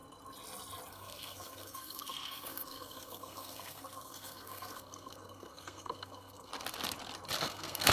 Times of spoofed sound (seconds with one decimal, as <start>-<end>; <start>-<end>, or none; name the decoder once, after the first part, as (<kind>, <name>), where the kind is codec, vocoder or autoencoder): 0.9-6.5 (codec, SNAC); 7.4-7.9